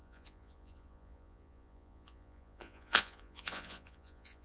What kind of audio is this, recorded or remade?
remade